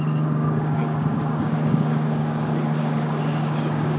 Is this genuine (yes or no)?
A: no